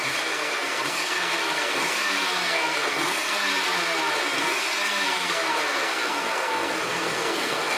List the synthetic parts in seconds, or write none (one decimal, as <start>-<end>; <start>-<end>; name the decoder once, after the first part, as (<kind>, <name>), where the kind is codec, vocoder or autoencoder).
0.0-3.5 (codec, SNAC); 4.2-7.8